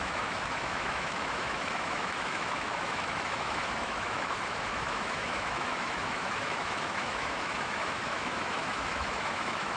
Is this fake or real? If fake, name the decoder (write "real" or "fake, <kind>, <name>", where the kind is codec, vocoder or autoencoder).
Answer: fake, autoencoder, DAC-VAE